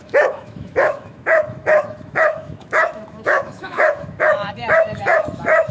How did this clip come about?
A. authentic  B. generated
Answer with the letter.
B